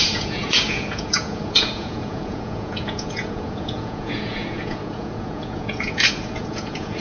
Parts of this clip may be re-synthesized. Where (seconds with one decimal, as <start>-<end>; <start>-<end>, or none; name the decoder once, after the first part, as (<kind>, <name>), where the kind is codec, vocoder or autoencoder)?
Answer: 0.0-7.0 (vocoder, Vocos)